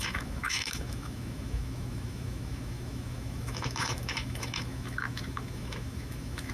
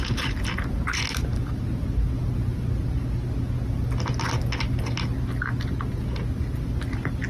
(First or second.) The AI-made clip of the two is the first